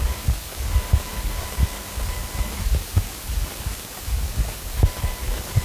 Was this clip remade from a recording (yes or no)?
yes